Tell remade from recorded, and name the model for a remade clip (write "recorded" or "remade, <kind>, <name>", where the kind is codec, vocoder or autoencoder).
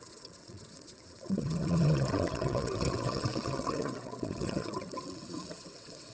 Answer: remade, vocoder, WaveNeXt